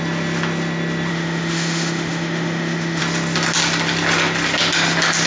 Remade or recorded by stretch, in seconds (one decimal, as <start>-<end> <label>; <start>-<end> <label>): 0.0-1.1 recorded; 1.1-3.0 remade; 3.0-5.3 recorded

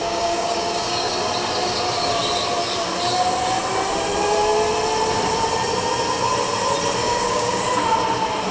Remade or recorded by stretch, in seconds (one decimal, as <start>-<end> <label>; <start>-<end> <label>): 0.0-1.1 remade; 1.1-7.0 recorded; 7.0-7.6 remade; 7.6-8.5 recorded

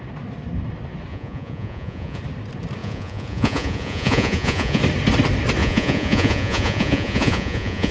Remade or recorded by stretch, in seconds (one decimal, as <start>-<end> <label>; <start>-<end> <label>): 0.0-1.1 recorded; 1.1-2.2 remade; 2.2-2.8 recorded; 2.8-4.8 remade; 4.8-5.6 recorded; 5.6-7.9 remade

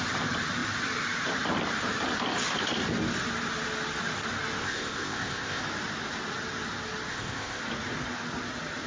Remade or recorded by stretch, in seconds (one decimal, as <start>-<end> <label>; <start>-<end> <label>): 0.0-4.6 recorded; 4.6-5.6 remade; 5.6-7.1 recorded; 7.1-7.6 remade; 7.6-8.9 recorded

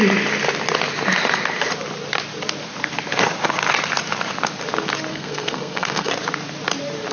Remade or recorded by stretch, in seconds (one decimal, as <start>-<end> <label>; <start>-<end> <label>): 0.0-5.1 recorded; 5.1-6.1 remade; 6.1-7.1 recorded

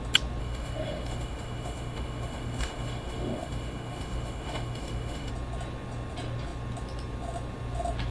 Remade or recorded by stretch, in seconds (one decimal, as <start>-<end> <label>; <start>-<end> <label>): 0.0-0.4 recorded; 0.4-5.3 remade; 5.3-8.1 recorded

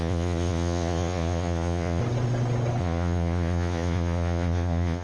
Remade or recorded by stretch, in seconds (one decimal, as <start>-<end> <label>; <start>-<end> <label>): 0.0-2.0 remade; 2.0-2.8 recorded; 2.8-5.0 remade

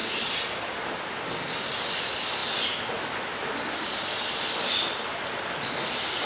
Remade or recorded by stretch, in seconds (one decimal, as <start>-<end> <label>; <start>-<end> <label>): 0.0-6.3 recorded